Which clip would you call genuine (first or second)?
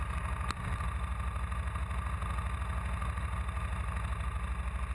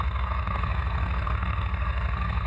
first